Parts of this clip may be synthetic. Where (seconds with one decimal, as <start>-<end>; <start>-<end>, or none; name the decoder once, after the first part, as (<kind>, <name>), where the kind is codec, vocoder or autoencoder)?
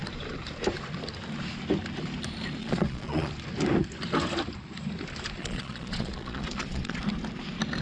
2.6-3.3 (vocoder, Vocos); 5.4-7.0